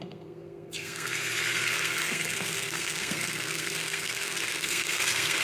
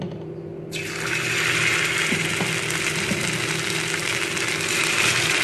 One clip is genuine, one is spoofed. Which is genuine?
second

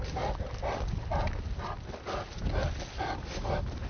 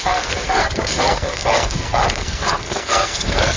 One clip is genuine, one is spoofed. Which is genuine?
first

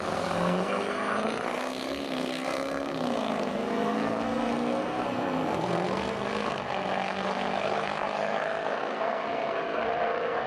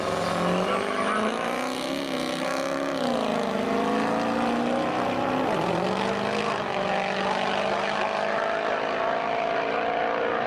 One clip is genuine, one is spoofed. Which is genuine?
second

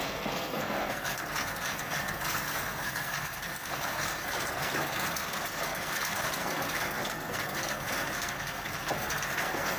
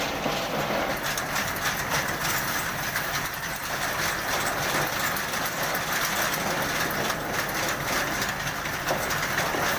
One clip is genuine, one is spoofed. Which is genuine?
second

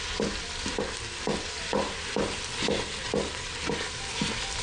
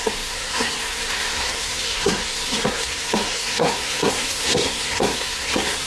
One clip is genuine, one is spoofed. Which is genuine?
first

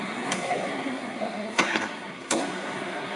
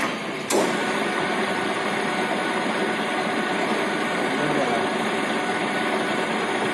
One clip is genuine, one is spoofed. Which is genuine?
second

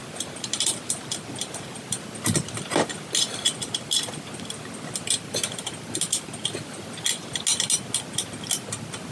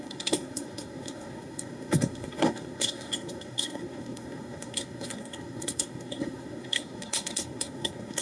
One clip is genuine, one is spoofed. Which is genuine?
first